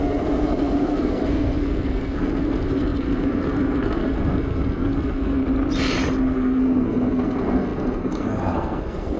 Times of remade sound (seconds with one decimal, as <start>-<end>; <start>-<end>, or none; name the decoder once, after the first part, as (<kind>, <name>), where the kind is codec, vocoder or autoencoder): 0.0-5.4 (codec, SNAC); 6.2-9.2